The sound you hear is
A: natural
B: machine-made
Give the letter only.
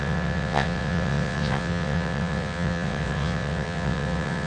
B